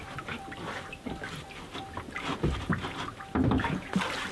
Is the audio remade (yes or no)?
no